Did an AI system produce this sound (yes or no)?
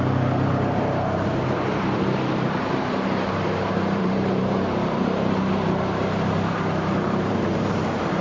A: yes